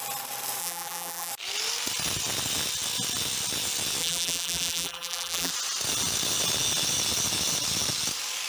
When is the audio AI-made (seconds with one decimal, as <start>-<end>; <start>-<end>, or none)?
0.6-1.3; 4.0-5.5